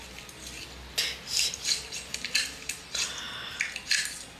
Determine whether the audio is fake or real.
real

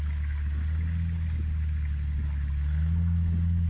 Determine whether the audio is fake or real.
real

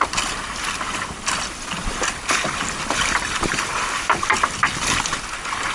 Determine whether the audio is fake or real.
fake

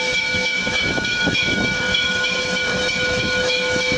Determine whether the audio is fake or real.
fake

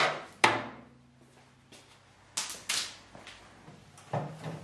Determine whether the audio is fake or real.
real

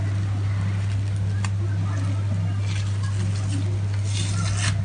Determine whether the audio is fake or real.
real